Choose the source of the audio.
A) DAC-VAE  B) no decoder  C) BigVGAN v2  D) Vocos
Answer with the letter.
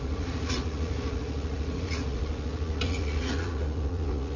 D